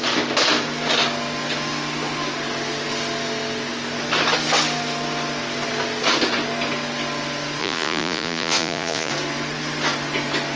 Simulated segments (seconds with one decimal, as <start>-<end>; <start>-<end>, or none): 7.6-9.1